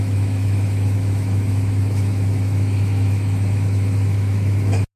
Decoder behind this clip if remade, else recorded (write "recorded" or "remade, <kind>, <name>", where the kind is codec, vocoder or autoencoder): remade, autoencoder, DAC-VAE